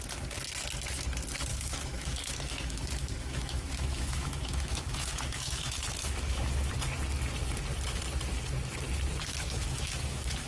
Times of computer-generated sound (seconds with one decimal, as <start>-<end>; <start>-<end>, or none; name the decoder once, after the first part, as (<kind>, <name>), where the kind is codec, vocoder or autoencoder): 1.5-6.7 (autoencoder, DAC-VAE); 9.3-10.5